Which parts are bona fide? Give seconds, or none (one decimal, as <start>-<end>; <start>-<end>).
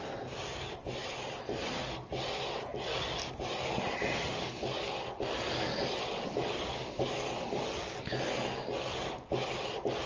0.0-1.0; 1.7-8.9